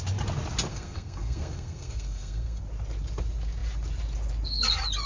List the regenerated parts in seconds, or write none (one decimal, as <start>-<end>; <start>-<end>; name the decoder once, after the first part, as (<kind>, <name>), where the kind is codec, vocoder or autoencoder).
0.7-2.6 (codec, SNAC)